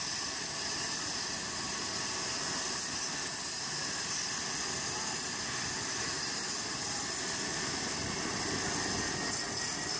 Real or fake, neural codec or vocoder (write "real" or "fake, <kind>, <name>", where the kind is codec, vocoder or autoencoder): real